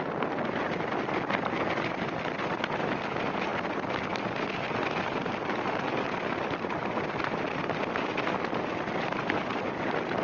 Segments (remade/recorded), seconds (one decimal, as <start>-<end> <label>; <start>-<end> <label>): 0.0-10.2 recorded